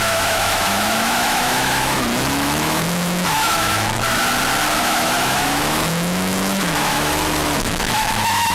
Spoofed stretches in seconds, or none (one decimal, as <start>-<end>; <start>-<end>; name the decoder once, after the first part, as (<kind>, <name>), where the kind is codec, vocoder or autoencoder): 0.0-4.2 (autoencoder, DAC-VAE); 4.8-8.5